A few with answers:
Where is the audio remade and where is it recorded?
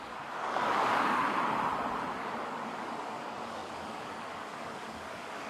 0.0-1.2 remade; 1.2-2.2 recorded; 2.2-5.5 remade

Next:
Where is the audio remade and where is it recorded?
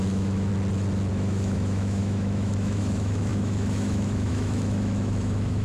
0.0-0.5 remade; 0.5-1.1 recorded; 1.1-5.6 remade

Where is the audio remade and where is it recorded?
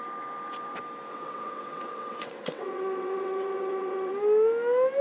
0.0-1.1 recorded; 1.1-4.1 remade; 4.1-5.0 recorded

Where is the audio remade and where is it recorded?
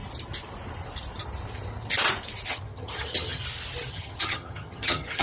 0.0-2.5 recorded; 2.5-3.4 remade; 3.4-3.9 recorded; 3.9-5.2 remade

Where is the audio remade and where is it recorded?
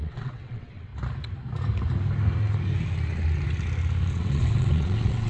0.0-0.9 remade; 0.9-4.1 recorded; 4.1-5.3 remade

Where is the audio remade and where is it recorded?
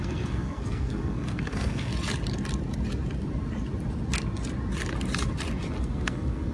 0.0-1.9 remade; 1.9-5.8 recorded; 5.8-6.5 remade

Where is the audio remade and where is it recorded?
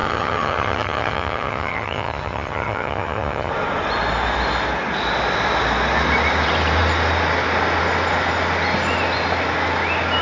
0.0-3.5 remade; 3.5-10.2 recorded